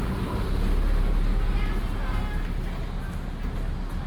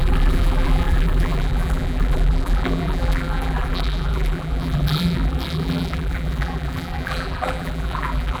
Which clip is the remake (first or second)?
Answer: second